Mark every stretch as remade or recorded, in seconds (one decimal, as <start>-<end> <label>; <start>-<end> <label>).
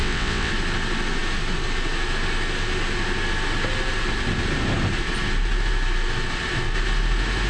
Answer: 0.0-0.5 remade; 0.5-7.5 recorded